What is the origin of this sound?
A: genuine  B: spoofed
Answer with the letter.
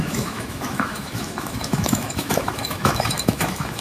B